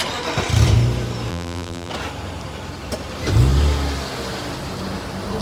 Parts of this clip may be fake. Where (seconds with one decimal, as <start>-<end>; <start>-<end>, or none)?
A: 1.3-1.9